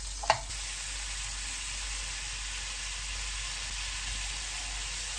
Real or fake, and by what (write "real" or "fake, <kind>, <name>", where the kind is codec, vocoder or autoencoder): real